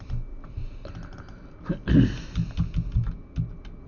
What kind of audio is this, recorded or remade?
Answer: recorded